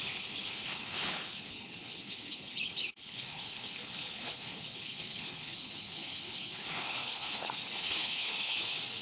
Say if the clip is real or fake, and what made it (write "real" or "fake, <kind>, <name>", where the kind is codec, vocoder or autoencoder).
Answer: fake, codec, HILCodec